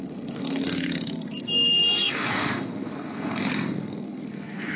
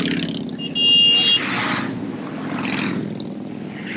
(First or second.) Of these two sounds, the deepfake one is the first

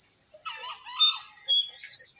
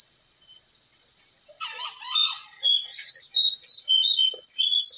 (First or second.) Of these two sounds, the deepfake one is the second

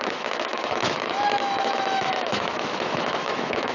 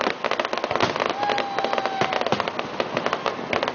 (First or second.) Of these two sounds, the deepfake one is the first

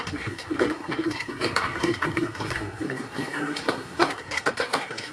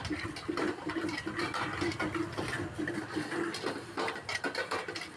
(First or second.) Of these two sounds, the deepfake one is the first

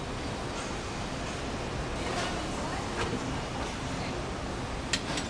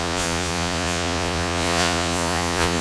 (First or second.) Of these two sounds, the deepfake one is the second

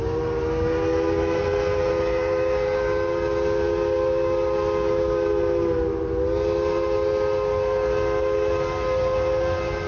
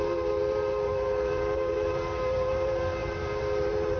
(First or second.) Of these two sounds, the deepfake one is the second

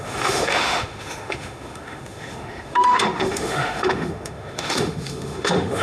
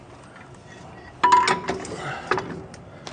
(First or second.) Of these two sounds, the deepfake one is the first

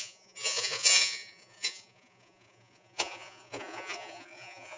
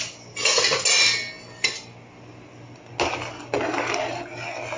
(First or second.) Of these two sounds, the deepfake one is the first